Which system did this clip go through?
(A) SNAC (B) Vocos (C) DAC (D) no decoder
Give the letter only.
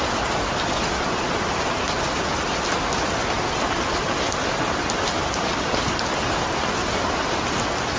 D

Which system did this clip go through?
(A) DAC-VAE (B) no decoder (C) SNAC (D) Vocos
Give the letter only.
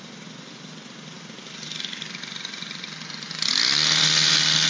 B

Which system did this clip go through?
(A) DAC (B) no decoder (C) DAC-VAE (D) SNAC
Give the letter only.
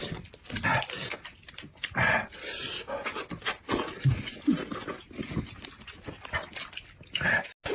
B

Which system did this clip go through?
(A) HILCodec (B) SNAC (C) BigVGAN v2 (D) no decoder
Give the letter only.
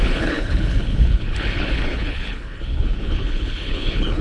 A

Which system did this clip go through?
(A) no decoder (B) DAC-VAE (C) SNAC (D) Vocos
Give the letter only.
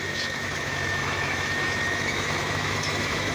B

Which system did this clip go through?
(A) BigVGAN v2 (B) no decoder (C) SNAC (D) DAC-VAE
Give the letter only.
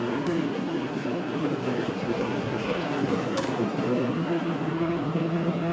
C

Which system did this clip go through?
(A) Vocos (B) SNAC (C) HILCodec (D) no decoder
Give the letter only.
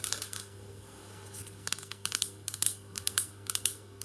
B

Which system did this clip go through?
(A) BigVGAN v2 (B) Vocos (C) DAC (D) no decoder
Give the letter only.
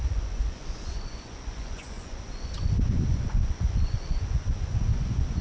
B